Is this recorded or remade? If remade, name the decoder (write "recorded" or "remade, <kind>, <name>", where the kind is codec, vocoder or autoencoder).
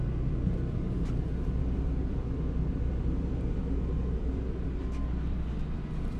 remade, vocoder, BigVGAN v2